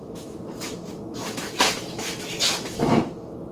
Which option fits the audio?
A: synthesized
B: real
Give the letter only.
A